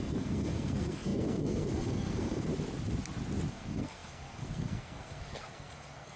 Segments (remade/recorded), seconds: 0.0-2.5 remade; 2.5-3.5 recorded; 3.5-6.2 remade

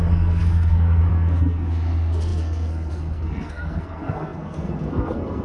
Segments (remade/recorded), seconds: 0.0-5.4 remade